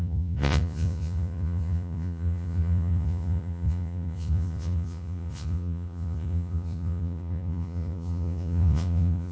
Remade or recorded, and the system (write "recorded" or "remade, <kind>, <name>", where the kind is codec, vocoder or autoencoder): remade, vocoder, Vocos